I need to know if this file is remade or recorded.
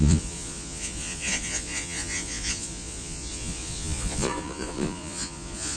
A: remade